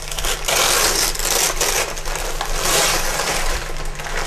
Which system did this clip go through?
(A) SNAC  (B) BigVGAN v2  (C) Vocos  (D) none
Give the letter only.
D